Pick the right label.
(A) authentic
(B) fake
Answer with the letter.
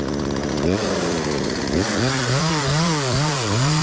B